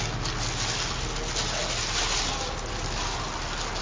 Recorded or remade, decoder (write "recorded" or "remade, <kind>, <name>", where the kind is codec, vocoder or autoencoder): recorded